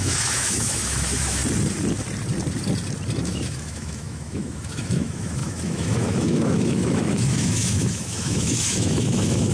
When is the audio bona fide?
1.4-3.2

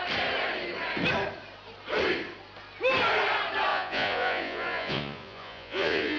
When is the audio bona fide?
0.0-3.7

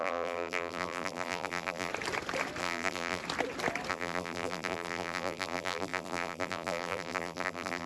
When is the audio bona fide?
1.9-2.6; 3.2-3.9

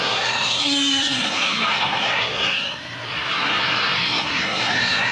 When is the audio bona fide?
none

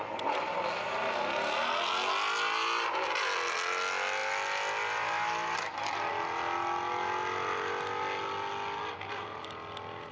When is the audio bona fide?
0.0-10.1